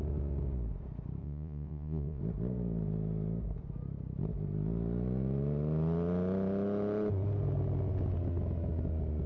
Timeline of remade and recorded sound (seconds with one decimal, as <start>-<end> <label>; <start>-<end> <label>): 0.0-1.2 recorded; 1.2-2.2 remade; 2.2-9.3 recorded